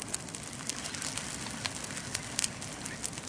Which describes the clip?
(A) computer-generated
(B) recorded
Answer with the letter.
B